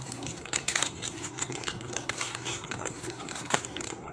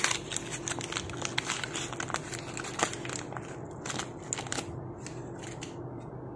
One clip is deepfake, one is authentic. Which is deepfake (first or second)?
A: first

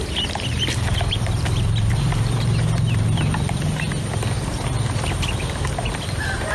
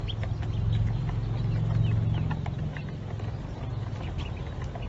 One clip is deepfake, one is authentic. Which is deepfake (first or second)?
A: first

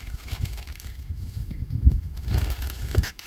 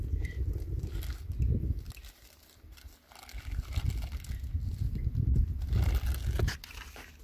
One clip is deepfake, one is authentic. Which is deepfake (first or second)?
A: first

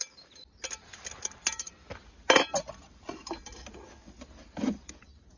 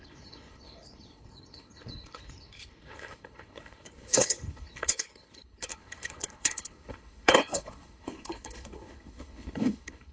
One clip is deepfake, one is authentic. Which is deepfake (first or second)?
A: second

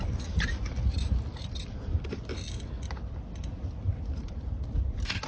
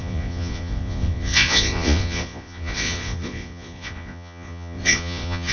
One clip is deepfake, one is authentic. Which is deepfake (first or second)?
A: second